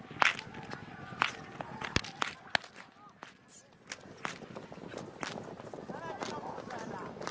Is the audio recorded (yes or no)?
yes